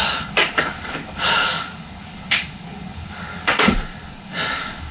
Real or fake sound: fake